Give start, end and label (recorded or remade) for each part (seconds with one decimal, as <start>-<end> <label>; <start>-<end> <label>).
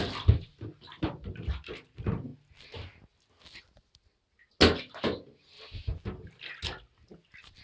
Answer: 0.0-7.6 recorded